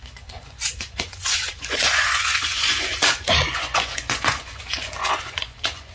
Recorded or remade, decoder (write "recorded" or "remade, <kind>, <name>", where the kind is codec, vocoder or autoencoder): remade, vocoder, Vocos